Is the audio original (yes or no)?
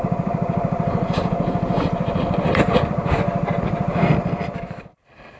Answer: no